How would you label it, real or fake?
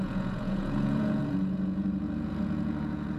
fake